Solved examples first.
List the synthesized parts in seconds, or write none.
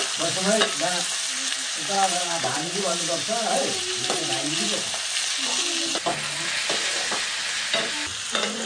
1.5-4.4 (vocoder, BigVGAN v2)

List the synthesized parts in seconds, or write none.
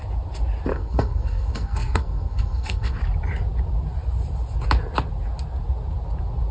0.7-3.0 (codec, SNAC)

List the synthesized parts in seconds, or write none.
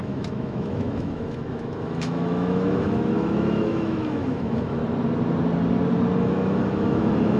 0.0-4.8 (autoencoder, DAC-VAE); 6.2-7.4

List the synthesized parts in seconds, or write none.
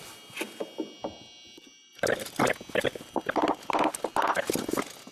none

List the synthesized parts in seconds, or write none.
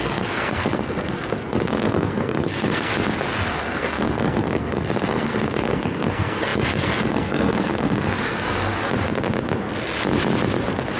0.0-2.9 (codec, SNAC); 3.5-8.7